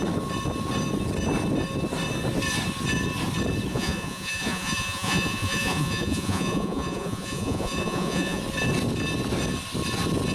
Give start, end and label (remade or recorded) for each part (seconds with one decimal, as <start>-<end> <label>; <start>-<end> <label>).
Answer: 0.0-3.7 recorded; 3.7-8.4 remade; 8.4-10.3 recorded